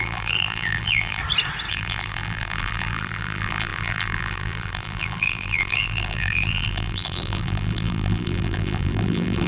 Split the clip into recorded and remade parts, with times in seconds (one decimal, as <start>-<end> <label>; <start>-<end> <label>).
0.0-1.2 remade; 1.2-1.7 recorded; 1.7-9.5 remade